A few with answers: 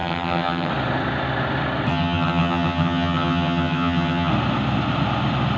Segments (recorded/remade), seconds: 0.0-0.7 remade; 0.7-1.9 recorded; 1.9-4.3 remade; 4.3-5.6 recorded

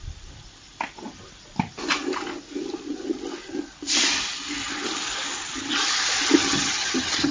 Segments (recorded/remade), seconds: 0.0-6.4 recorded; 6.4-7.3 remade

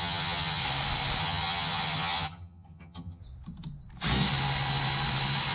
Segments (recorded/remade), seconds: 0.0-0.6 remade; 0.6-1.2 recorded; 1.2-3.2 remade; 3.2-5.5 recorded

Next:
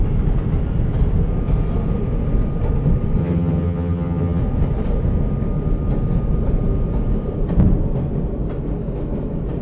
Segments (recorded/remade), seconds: 0.0-3.2 recorded; 3.2-4.4 remade; 4.4-9.6 recorded